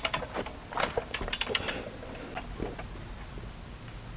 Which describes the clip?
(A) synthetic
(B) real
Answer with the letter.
B